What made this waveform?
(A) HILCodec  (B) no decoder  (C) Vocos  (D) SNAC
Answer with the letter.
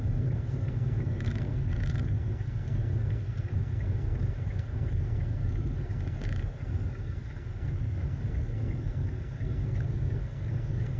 D